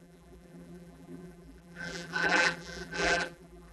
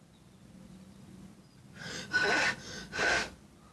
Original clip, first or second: second